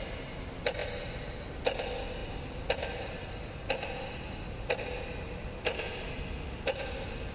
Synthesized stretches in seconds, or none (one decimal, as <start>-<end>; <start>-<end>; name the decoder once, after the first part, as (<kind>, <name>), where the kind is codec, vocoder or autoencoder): none